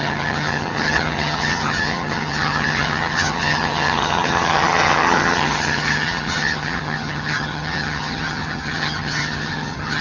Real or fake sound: fake